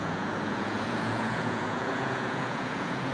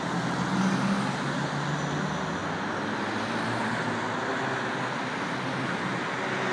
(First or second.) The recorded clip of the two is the second